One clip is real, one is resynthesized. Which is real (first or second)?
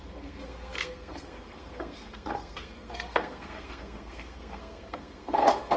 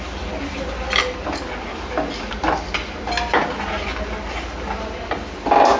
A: second